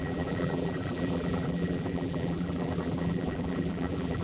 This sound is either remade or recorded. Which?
remade